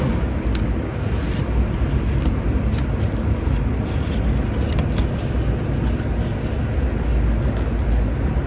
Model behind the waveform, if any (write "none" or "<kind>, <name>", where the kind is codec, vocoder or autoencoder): none